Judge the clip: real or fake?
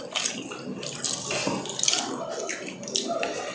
real